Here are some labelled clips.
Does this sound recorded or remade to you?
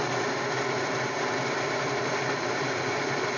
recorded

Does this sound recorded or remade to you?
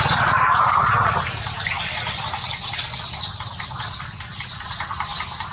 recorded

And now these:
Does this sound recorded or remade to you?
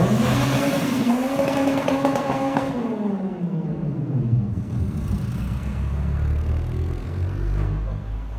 remade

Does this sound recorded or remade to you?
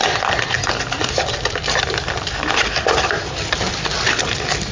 recorded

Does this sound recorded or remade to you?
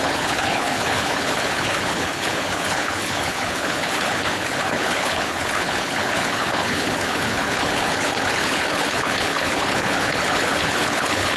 remade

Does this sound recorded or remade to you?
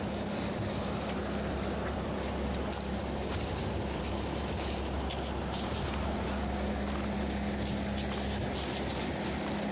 remade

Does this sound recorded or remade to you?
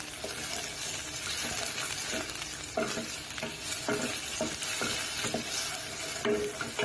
recorded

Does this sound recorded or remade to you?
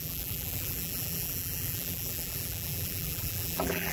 remade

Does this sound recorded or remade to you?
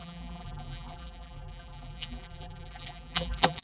remade